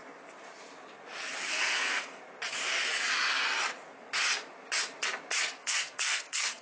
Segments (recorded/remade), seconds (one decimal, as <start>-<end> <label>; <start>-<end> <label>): 0.0-1.5 recorded; 1.5-2.2 remade; 2.2-5.6 recorded; 5.6-6.6 remade